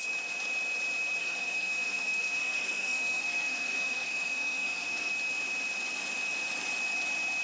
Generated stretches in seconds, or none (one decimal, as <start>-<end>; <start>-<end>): 1.2-5.1